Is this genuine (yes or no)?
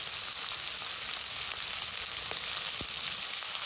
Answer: yes